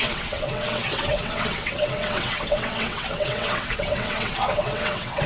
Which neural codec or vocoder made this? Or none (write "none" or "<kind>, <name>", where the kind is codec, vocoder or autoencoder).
vocoder, WaveNeXt